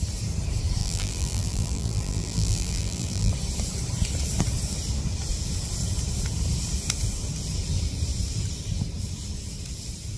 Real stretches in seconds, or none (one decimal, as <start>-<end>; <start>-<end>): 0.0-0.8; 3.3-10.2

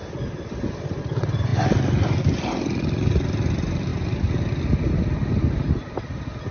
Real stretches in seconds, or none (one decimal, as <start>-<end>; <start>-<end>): 0.0-6.5